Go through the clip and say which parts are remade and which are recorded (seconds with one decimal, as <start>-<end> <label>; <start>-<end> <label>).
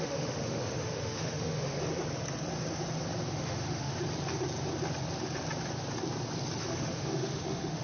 0.0-1.8 remade; 1.8-3.3 recorded; 3.3-3.9 remade; 3.9-6.6 recorded; 6.6-7.8 remade